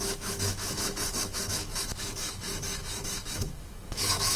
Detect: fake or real fake